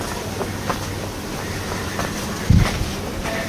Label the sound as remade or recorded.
recorded